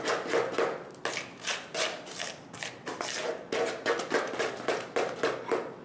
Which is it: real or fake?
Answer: real